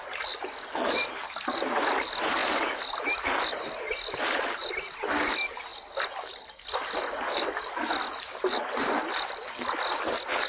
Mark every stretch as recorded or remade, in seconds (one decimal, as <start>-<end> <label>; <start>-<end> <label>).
0.0-10.5 recorded